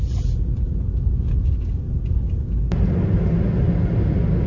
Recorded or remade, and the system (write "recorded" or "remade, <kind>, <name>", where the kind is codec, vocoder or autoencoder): recorded